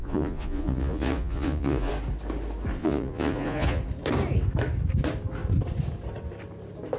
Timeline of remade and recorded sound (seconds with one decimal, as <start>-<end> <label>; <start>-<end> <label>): 0.0-1.9 remade; 1.9-2.8 recorded; 2.8-3.8 remade; 3.8-7.0 recorded